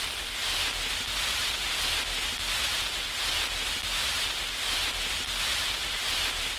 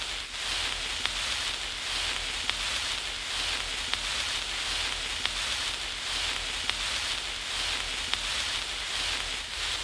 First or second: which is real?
second